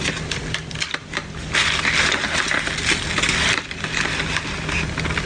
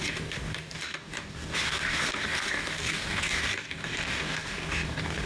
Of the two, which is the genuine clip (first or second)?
first